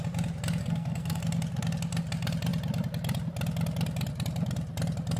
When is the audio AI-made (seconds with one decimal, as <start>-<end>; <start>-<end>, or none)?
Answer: 0.6-1.2